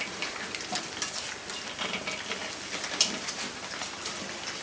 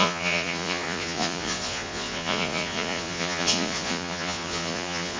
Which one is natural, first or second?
first